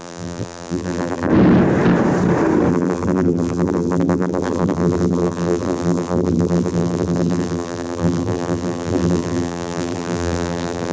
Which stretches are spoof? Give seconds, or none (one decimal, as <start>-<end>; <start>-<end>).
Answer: 0.0-1.3; 2.7-10.9